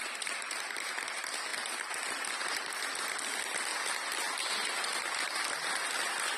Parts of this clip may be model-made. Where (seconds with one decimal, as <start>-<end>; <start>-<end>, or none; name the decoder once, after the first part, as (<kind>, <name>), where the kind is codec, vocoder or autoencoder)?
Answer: 0.0-1.5 (vocoder, BigVGAN v2); 2.3-3.7; 5.7-6.4